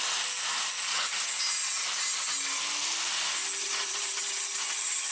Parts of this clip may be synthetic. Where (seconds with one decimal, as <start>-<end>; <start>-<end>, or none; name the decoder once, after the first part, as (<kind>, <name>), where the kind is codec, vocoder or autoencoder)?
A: 0.9-1.4 (vocoder, HiFi-GAN); 3.6-5.1